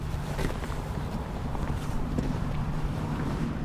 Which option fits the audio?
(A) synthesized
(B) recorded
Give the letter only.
A